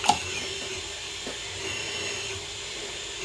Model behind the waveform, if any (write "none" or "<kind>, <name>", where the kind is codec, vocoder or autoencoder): none